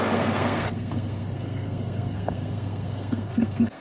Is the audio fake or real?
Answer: fake